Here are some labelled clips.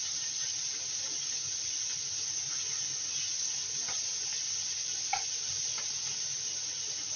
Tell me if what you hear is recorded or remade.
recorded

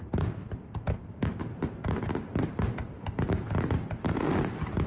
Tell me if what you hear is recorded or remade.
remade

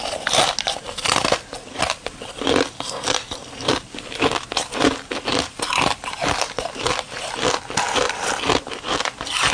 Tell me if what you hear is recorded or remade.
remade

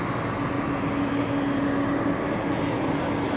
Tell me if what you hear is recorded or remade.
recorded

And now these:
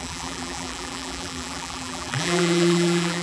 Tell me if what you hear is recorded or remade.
remade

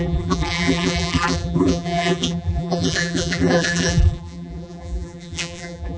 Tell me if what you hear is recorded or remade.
remade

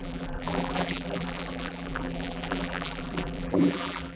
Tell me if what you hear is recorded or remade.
remade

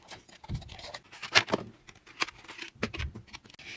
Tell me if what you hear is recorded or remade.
recorded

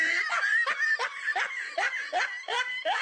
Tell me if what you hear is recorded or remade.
recorded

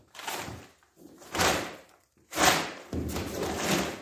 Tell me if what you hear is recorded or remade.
remade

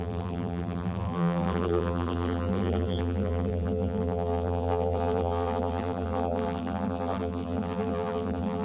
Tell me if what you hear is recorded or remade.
remade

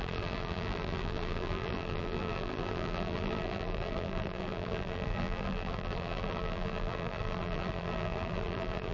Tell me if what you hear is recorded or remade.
remade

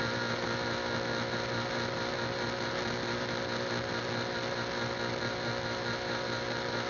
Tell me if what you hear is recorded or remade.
recorded